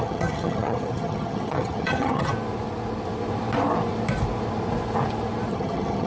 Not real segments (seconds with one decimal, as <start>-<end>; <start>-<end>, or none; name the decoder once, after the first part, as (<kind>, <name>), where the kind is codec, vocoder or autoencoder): 0.0-2.3 (vocoder, HiFi-GAN); 5.5-6.1